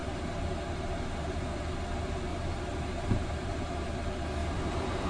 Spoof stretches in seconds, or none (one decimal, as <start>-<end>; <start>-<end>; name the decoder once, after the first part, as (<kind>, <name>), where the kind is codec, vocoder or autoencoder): 0.0-1.5 (vocoder, BigVGAN v2); 2.3-3.7; 4.4-5.1